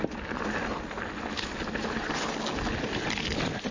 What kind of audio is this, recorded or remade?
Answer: recorded